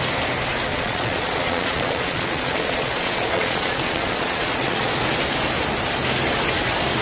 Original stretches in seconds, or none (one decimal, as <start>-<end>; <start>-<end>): 0.0-0.7; 4.9-7.0